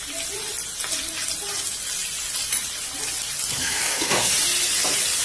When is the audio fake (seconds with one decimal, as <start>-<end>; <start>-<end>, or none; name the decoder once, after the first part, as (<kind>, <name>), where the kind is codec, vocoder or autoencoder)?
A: 3.5-4.3 (codec, SNAC)